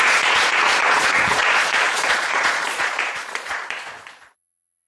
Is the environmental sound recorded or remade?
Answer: remade